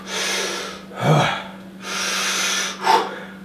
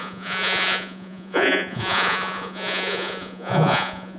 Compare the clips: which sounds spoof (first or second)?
second